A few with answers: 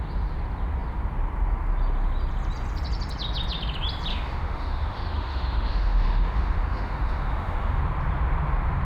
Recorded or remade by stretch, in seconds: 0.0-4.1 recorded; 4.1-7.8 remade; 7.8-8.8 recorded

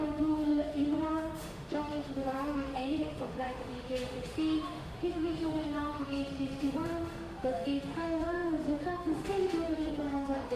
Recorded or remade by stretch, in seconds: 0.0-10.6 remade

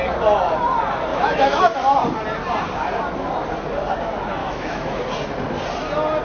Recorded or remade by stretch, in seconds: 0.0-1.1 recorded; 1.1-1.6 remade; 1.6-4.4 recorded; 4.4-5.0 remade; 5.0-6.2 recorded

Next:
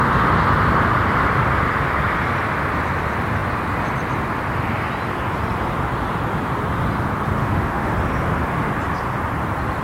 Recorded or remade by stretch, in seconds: 0.0-7.4 recorded; 7.4-7.9 remade; 7.9-9.8 recorded

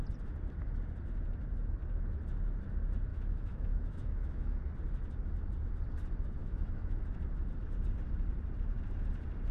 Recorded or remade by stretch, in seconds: 0.0-3.1 recorded; 3.1-4.6 remade; 4.6-6.4 recorded; 6.4-7.0 remade; 7.0-9.5 recorded

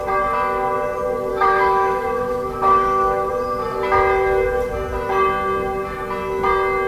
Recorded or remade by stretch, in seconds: 0.0-1.3 recorded; 1.3-3.3 remade; 3.3-6.9 recorded

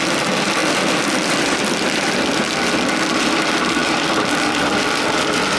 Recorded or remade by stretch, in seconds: 0.0-5.6 recorded